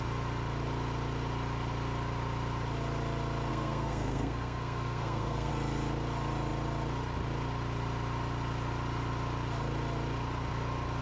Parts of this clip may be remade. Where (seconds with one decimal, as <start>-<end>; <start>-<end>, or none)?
3.5-5.5